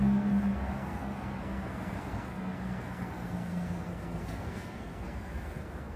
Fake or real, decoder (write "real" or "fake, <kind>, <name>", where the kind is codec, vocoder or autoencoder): fake, codec, SNAC